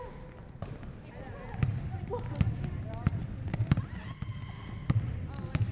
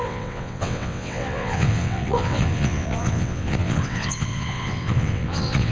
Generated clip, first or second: second